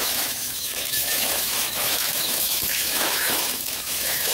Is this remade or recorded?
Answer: remade